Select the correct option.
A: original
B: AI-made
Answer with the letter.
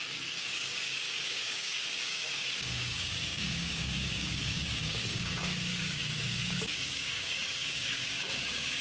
B